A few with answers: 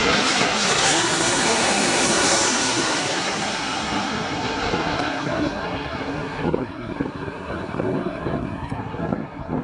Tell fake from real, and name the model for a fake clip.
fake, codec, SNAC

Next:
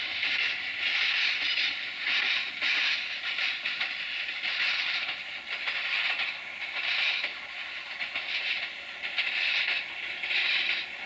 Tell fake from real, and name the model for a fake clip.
real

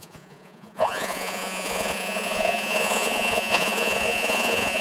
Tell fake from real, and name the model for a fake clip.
fake, vocoder, Vocos